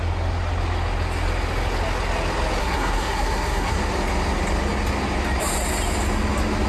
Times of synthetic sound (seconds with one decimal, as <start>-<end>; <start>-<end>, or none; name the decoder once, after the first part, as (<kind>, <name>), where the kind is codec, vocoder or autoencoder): 2.6-3.8 (codec, SNAC)